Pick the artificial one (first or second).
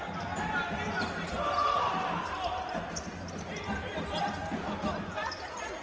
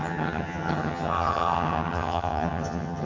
second